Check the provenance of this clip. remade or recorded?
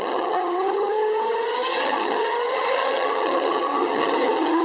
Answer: remade